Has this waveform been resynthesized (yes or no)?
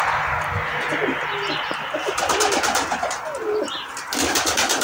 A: no